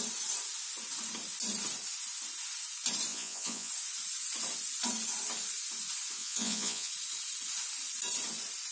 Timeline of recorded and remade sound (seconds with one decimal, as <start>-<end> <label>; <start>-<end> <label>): 0.0-3.1 recorded; 3.1-3.7 remade; 3.7-6.2 recorded; 6.2-6.9 remade; 6.9-8.7 recorded